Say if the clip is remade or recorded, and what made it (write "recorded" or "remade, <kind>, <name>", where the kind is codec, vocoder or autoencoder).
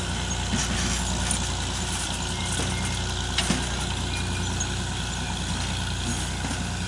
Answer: recorded